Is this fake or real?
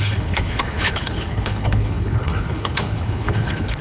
fake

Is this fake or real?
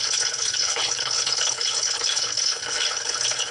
fake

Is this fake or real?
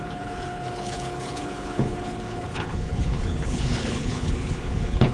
fake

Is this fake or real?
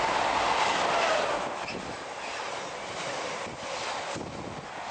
real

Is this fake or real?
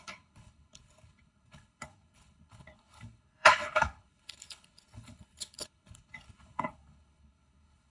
fake